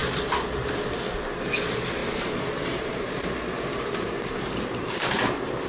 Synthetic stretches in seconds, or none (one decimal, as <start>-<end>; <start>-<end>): 2.0-5.7